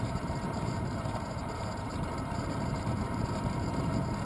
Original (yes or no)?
no